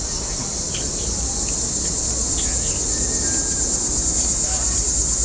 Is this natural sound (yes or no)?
yes